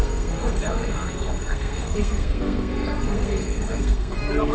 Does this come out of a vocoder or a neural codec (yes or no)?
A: yes